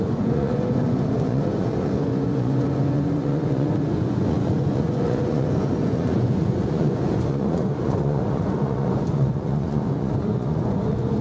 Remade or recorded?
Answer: remade